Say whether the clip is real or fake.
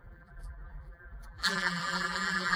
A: fake